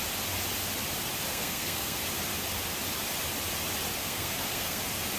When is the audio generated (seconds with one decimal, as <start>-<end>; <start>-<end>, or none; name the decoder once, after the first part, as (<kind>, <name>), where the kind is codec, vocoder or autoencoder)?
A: 1.3-2.0 (codec, SNAC); 4.0-4.8